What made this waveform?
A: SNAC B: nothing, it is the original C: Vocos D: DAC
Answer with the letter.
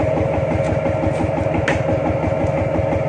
B